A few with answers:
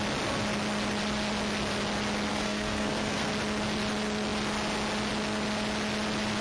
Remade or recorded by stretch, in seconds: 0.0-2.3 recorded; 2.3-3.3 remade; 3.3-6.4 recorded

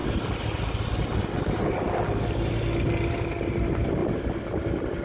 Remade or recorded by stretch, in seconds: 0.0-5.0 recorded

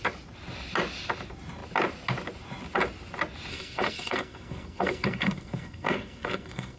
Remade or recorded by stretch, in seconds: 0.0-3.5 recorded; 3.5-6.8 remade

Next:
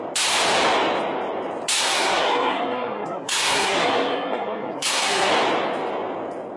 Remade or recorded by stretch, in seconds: 0.0-1.7 recorded; 1.7-5.3 remade; 5.3-6.6 recorded

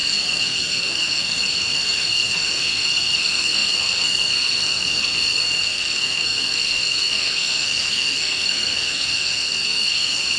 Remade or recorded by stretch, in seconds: 0.0-10.4 remade